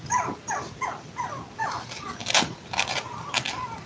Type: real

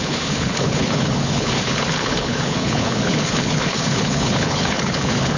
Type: fake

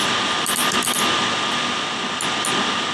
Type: real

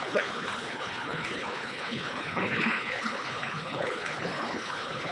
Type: fake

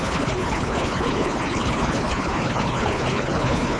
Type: fake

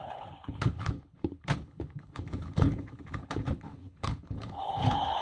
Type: fake